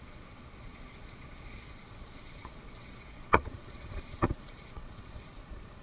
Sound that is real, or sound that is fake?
fake